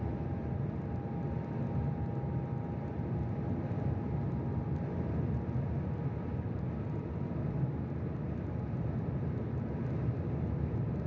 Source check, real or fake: real